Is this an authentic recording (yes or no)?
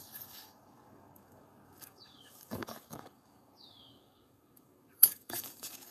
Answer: no